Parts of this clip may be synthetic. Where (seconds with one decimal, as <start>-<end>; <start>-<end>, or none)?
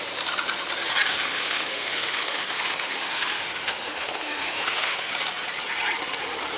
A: 1.1-5.1